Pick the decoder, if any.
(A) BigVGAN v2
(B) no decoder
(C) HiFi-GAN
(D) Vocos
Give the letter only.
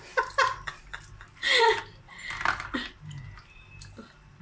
B